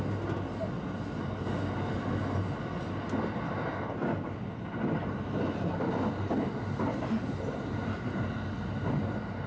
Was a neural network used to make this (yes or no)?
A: no